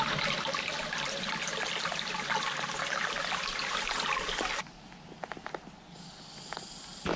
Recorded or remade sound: recorded